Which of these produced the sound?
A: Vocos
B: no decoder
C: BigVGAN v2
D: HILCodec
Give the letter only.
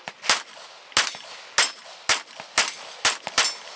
B